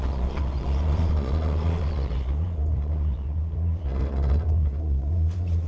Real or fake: fake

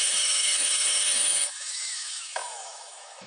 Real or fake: fake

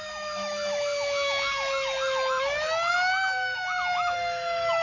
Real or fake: fake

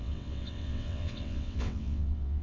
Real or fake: fake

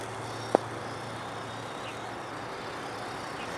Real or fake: real